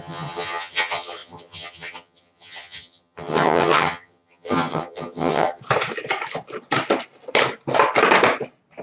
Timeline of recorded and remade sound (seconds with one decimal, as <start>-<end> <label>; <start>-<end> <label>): 0.0-5.6 remade; 5.6-8.8 recorded